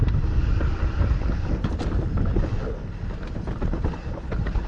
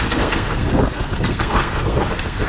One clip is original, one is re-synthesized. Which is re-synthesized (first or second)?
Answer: second